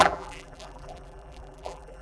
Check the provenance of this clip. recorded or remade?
remade